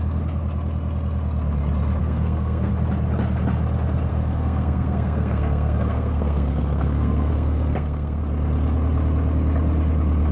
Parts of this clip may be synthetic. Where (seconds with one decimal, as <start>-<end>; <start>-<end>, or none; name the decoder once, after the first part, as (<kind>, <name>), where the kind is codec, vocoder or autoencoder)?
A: 2.0-2.7 (codec, SNAC); 4.1-8.2